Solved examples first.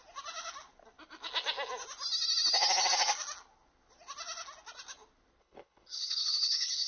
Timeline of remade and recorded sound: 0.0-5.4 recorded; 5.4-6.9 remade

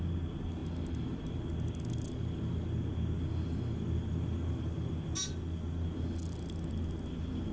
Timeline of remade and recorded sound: 0.0-7.5 recorded

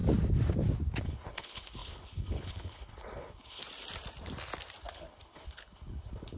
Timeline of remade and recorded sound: 0.0-1.0 recorded; 1.0-3.6 remade; 3.6-4.9 recorded; 4.9-6.4 remade

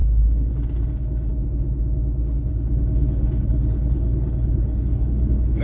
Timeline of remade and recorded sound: 0.0-1.3 remade; 1.3-2.5 recorded; 2.5-5.6 remade